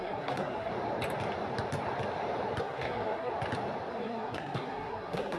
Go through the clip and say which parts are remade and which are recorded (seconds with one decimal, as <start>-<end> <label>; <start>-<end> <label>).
0.0-0.7 remade; 0.7-2.6 recorded; 2.6-3.3 remade; 3.3-3.9 recorded; 3.9-5.4 remade